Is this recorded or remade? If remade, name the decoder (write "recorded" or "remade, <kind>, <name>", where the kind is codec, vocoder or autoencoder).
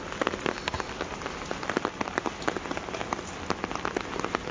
recorded